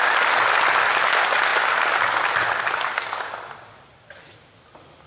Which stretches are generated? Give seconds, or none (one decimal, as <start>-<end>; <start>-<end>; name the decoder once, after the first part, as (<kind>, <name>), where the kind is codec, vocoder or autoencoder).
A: none